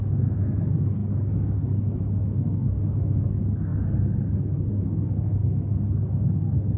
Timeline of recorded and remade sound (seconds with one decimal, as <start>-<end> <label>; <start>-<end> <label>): 0.0-6.8 remade